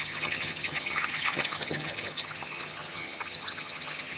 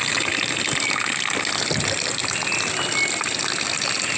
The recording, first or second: second